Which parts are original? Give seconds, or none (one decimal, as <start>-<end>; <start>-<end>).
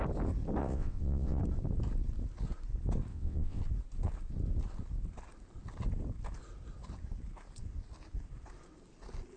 0.0-0.6; 1.4-3.1; 3.6-9.4